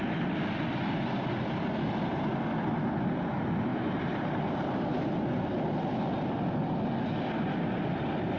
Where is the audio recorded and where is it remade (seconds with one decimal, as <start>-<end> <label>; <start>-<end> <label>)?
0.0-3.7 recorded; 3.7-5.0 remade; 5.0-8.4 recorded